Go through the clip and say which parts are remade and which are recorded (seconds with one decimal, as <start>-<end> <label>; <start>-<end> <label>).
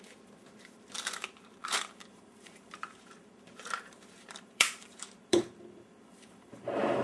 0.0-1.6 recorded; 1.6-5.4 remade; 5.4-6.1 recorded; 6.1-7.0 remade